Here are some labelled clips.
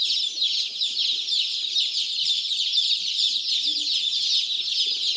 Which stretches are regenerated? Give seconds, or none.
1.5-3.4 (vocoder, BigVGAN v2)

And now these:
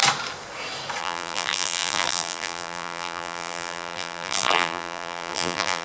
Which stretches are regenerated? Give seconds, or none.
1.0-5.8 (vocoder, BigVGAN v2)

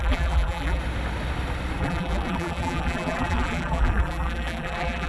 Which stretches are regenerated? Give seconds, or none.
0.0-0.8 (vocoder, BigVGAN v2); 1.8-5.1

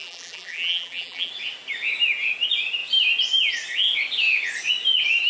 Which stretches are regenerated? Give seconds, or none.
0.0-1.3 (vocoder, BigVGAN v2)

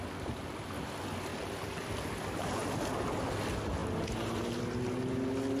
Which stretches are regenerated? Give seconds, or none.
1.3-1.9 (vocoder, BigVGAN v2)